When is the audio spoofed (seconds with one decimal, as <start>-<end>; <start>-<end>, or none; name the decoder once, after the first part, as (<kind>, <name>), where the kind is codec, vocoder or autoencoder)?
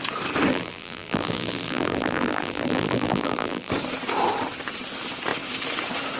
0.5-3.7 (vocoder, BigVGAN v2)